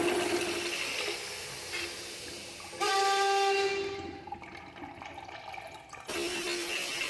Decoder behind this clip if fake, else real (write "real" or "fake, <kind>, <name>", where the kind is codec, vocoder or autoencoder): real